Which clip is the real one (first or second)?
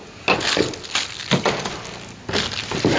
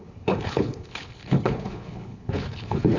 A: first